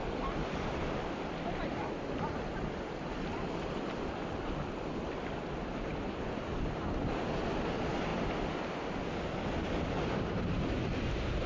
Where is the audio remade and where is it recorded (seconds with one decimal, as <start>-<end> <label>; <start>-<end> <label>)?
0.0-11.5 recorded